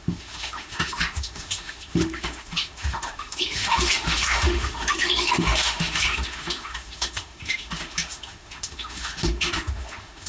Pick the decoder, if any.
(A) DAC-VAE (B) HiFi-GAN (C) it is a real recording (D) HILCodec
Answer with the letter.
A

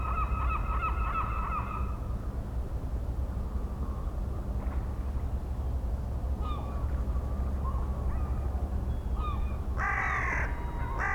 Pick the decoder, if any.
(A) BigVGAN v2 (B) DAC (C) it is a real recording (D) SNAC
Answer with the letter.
C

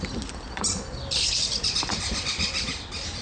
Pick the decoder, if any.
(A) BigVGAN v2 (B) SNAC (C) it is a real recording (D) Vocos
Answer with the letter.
C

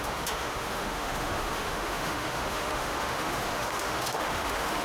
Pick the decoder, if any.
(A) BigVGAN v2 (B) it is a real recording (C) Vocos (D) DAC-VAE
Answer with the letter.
D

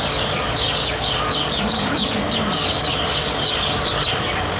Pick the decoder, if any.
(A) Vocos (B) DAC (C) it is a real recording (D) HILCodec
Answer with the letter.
B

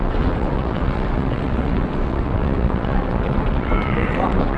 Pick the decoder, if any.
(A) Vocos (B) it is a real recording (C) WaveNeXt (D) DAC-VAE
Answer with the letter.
C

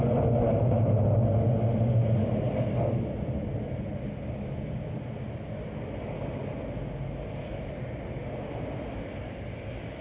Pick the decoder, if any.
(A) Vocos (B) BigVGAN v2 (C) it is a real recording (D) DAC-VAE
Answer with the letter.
C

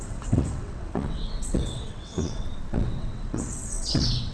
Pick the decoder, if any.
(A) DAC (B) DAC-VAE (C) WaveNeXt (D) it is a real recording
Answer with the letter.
C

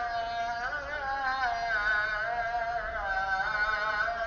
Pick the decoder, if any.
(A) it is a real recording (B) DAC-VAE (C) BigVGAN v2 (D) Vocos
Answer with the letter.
A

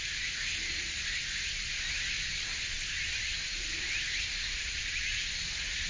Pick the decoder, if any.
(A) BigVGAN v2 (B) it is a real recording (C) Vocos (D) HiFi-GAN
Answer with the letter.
B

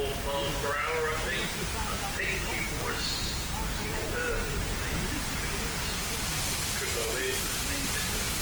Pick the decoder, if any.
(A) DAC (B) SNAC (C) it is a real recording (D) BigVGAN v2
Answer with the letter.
C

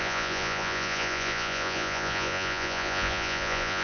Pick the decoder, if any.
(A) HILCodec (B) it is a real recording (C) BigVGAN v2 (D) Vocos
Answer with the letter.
D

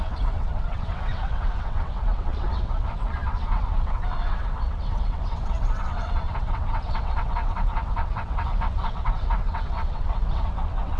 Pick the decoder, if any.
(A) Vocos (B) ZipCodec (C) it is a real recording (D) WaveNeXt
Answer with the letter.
D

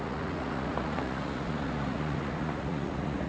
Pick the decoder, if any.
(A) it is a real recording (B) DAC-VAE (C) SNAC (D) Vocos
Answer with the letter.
D